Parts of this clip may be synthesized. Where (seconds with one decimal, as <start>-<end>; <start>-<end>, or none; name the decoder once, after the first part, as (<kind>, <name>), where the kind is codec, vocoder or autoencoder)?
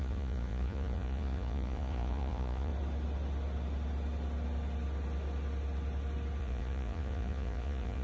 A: 0.0-2.7 (vocoder, Vocos); 6.4-8.0